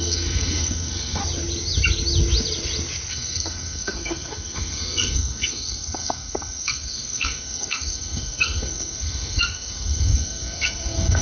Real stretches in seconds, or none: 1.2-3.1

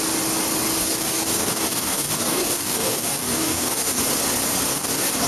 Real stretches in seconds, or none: 0.0-0.8; 4.0-4.7

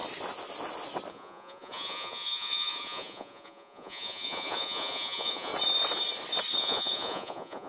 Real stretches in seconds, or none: 0.0-1.1; 5.5-6.6